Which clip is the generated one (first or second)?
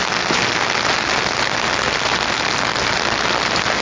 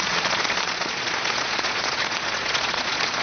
second